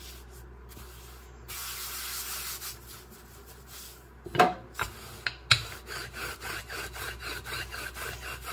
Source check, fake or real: real